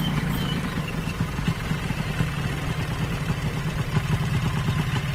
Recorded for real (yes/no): no